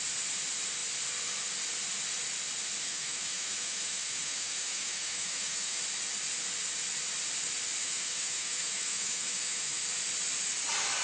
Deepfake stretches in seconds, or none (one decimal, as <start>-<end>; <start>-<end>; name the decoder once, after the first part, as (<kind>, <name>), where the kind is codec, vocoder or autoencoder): 2.8-5.8 (autoencoder, DAC-VAE); 7.8-9.8